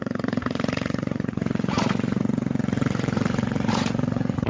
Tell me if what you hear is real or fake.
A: fake